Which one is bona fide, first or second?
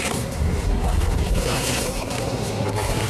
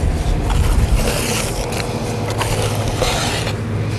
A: second